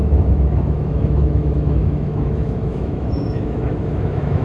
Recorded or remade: remade